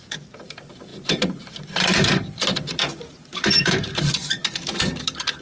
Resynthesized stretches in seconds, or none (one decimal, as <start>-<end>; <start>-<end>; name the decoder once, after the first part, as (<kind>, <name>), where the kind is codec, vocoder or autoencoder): 0.9-2.4 (vocoder, BigVGAN v2); 3.3-4.1